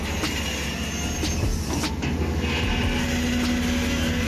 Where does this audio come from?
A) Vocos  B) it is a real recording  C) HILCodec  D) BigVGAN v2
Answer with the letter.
B